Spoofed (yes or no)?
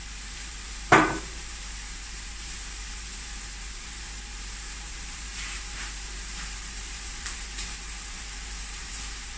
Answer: yes